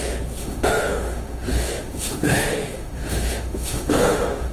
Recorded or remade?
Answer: remade